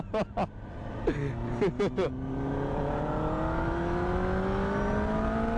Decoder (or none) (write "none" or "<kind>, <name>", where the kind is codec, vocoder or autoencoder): none